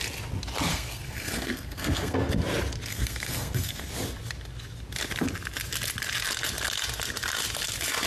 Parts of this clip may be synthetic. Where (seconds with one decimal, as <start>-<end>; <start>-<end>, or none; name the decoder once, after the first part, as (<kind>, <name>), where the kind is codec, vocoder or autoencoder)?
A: 0.7-2.3 (codec, SNAC); 2.9-3.9